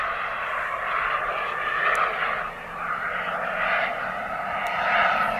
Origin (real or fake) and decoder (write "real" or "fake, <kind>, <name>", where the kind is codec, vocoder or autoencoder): real